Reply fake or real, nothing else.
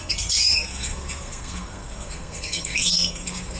fake